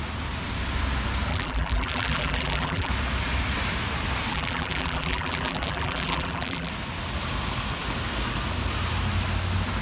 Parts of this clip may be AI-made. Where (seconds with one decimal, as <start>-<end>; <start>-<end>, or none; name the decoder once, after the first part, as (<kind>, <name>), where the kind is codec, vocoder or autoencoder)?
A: 1.3-2.9 (vocoder, BigVGAN v2); 4.3-6.7